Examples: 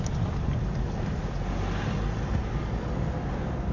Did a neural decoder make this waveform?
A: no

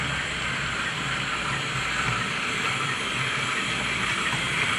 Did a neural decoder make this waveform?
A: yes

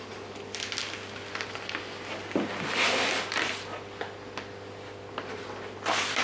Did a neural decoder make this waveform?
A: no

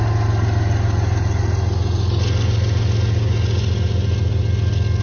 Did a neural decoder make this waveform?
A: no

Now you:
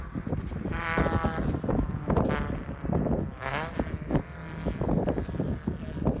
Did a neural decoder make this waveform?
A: no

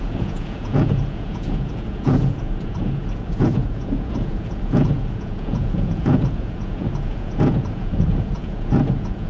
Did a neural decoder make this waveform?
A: yes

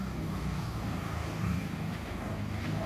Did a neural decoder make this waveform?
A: yes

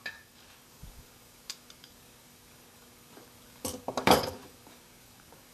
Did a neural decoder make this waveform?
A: yes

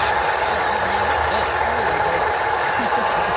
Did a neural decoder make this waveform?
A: no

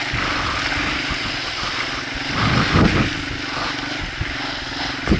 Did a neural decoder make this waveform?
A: no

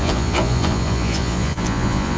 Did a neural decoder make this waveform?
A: yes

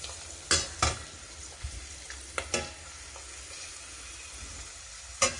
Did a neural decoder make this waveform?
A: no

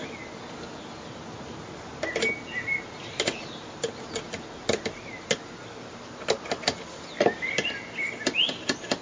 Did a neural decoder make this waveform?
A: no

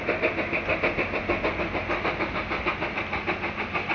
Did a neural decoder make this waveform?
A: no